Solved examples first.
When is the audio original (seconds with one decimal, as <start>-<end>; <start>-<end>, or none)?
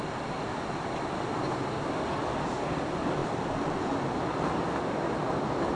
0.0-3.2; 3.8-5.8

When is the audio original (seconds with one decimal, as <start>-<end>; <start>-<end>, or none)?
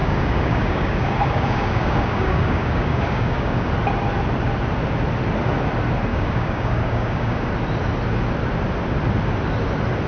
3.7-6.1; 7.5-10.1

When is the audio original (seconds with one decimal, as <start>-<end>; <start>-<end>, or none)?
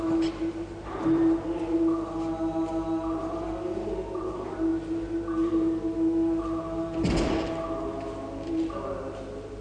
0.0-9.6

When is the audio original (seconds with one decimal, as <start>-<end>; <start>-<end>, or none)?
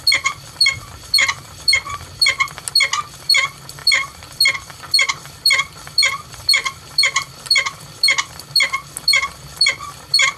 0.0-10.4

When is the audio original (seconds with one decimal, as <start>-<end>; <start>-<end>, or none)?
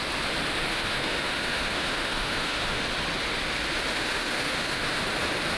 0.0-0.7; 2.8-3.9; 5.0-5.6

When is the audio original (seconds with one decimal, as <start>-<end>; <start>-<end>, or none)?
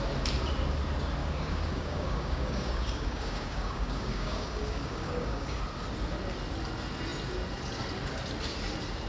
0.0-1.2; 5.6-9.1